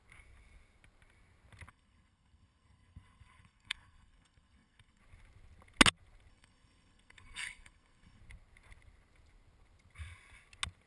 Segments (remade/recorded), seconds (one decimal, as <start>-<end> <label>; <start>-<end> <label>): 0.0-1.7 recorded; 1.7-5.0 remade; 5.0-6.3 recorded; 6.3-8.2 remade; 8.2-10.9 recorded